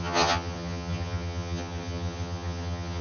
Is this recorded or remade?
remade